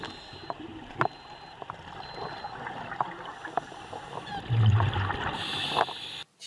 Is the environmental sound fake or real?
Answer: real